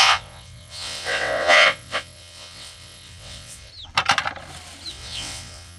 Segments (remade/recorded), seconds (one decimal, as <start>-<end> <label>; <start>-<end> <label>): 0.0-3.7 remade; 3.7-4.9 recorded; 4.9-5.8 remade